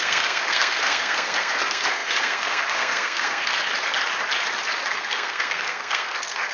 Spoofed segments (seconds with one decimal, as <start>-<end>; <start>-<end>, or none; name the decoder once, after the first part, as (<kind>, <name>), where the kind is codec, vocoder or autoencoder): 0.0-3.6 (codec, SNAC); 4.9-6.5